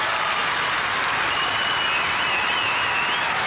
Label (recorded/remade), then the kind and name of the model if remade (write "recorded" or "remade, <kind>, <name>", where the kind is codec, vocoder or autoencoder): recorded